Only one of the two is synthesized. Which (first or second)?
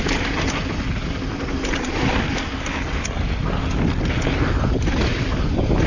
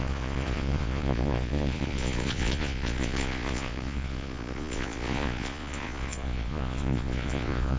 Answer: second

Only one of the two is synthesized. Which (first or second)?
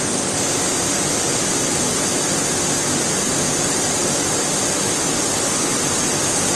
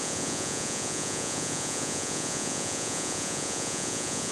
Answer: second